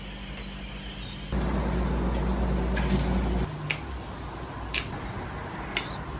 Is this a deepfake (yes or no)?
no